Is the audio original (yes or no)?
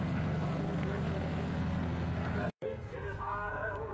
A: no